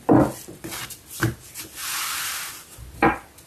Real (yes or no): yes